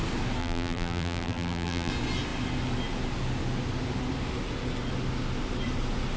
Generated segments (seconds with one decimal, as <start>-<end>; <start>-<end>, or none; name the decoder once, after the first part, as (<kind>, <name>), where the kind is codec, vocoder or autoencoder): 0.4-1.9 (vocoder, BigVGAN v2)